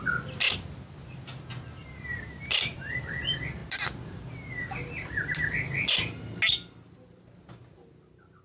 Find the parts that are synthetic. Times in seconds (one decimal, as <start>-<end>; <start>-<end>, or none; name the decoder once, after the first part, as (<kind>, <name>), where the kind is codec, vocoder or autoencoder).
1.8-3.0 (vocoder, BigVGAN v2)